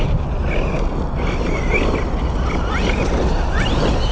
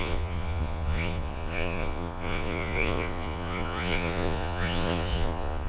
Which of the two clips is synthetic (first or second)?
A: second